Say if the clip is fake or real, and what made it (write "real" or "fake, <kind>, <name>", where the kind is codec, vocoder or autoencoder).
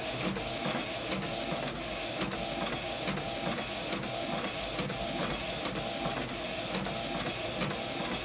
real